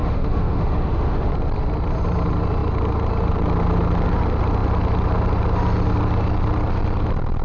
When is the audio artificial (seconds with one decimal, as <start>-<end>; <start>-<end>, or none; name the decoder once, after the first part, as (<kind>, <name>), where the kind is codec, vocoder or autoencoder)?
0.0-1.3 (autoencoder, DAC-VAE)